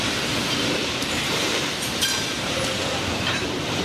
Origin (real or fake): fake